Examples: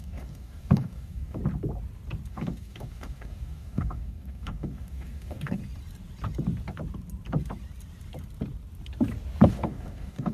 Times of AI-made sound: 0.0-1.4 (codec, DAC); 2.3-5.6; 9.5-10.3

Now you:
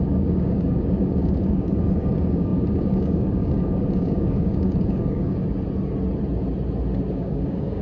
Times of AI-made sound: 0.0-5.4 (codec, DAC); 7.1-7.8